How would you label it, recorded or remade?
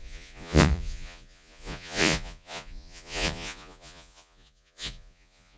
remade